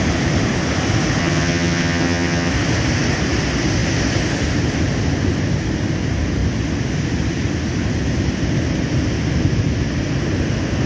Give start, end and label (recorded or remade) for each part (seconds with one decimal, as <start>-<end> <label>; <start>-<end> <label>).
0.0-1.2 recorded; 1.2-2.5 remade; 2.5-10.9 recorded